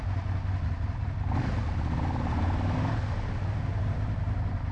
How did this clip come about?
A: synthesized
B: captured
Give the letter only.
B